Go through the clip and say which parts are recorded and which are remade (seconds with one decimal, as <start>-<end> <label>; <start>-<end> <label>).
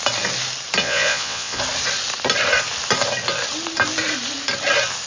0.0-0.8 recorded; 0.8-1.6 remade; 1.6-5.1 recorded